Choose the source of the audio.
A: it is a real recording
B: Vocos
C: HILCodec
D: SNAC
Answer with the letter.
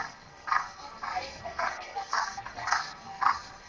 D